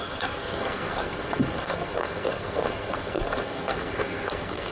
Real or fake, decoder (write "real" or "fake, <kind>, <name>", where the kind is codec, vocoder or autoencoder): fake, codec, SNAC